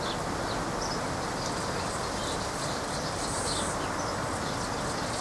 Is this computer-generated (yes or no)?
no